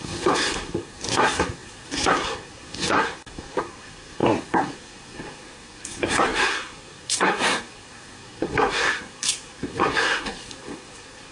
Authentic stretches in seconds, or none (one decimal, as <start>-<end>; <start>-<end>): none